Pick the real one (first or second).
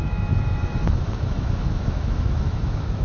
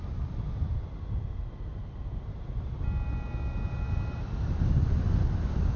second